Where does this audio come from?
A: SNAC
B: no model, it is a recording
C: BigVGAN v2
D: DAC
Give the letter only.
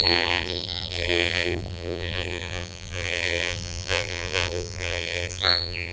C